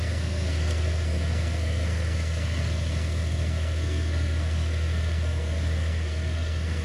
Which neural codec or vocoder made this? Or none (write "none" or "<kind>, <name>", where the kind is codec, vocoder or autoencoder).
codec, SNAC